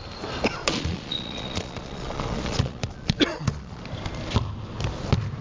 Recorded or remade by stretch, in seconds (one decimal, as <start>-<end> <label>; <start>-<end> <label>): 0.0-0.6 recorded; 0.6-3.8 remade; 3.8-5.4 recorded